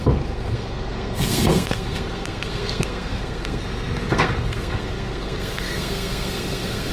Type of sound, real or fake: fake